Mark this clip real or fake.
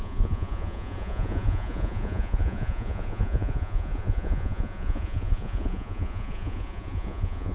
fake